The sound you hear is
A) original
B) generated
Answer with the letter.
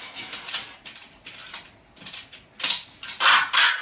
A